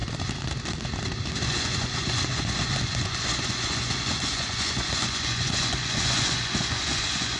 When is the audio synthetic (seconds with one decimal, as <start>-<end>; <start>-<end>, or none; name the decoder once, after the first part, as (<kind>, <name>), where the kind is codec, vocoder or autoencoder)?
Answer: 1.4-7.4 (vocoder, Vocos)